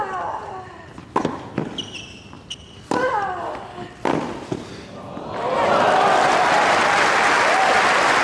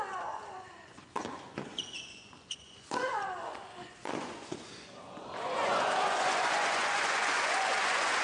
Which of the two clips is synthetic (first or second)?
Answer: second